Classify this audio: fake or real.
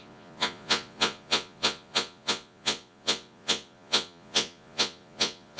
fake